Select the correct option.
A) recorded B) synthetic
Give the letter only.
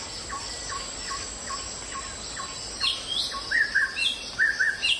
A